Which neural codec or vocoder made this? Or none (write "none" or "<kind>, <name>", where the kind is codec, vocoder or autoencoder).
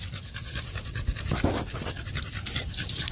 none